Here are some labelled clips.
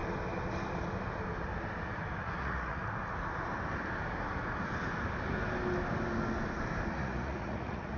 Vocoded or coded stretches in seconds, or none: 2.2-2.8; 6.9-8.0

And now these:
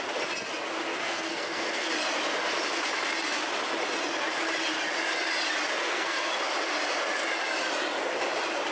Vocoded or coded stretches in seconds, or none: 0.9-1.9; 5.8-6.3